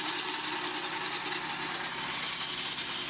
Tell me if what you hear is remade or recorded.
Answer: recorded